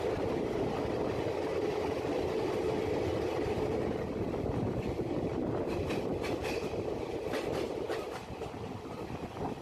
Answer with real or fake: real